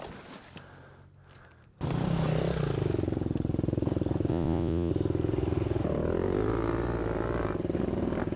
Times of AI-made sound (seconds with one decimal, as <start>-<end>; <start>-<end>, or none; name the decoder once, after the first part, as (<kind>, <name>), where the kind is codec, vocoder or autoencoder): 4.3-4.9 (vocoder, Vocos)